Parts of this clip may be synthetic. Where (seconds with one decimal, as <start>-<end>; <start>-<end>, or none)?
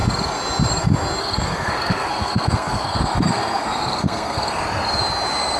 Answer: 1.2-4.6